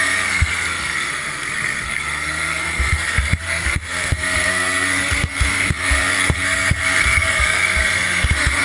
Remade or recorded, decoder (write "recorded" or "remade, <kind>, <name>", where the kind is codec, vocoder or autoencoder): remade, codec, SNAC